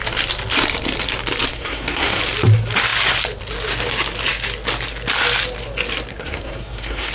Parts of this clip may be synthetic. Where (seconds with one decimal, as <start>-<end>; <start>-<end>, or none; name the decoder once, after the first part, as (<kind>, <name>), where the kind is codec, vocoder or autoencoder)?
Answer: 1.5-2.2 (codec, SNAC); 6.1-7.1

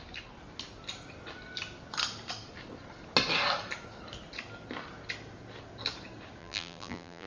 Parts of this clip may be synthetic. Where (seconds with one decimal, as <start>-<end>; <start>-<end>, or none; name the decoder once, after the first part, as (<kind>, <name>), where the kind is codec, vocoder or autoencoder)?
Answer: 6.4-7.3 (vocoder, BigVGAN v2)

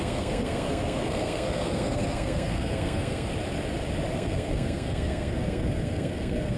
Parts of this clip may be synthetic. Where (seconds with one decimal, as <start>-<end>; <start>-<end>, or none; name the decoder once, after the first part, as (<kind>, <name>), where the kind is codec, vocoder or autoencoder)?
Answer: 0.0-3.3 (codec, SNAC); 4.1-6.6

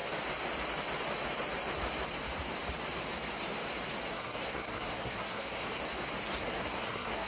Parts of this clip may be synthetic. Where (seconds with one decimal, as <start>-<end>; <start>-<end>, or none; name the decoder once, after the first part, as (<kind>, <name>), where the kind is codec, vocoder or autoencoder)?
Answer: 4.1-5.6 (codec, SNAC); 6.4-7.3